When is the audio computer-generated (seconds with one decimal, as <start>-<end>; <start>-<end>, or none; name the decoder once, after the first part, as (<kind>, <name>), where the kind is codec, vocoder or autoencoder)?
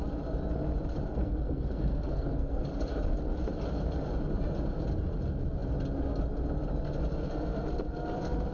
1.1-2.7 (codec, SNAC)